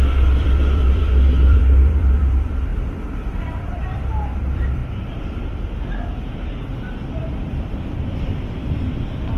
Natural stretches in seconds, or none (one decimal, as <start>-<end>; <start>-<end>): 3.8-4.3; 4.8-6.3